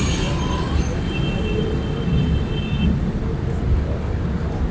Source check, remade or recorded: recorded